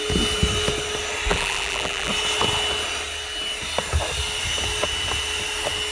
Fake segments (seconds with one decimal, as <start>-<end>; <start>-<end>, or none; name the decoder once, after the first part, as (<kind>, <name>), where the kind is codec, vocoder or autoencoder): 1.3-2.1 (vocoder, BigVGAN v2)